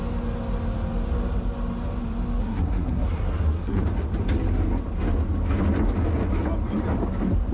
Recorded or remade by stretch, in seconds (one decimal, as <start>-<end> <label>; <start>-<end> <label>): 0.0-2.4 recorded; 2.4-3.8 remade; 3.8-7.5 recorded